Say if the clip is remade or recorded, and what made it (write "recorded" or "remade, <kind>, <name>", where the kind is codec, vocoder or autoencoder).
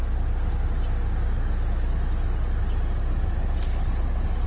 recorded